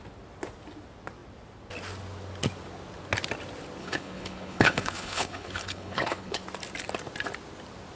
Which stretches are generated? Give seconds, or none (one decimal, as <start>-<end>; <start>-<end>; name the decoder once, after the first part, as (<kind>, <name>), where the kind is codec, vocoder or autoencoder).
3.8-6.4 (codec, HILCodec)